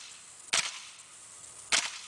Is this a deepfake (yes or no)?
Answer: no